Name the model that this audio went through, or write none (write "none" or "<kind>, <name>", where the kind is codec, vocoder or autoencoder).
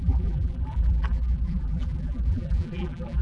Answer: vocoder, BigVGAN v2